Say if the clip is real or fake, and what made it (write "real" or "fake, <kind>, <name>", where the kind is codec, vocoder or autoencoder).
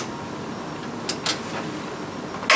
real